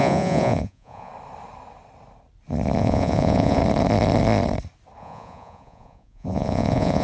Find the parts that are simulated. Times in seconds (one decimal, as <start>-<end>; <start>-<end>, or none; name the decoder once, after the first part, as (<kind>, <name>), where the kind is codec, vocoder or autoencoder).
0.0-1.1 (vocoder, Vocos); 2.8-3.6; 5.0-7.0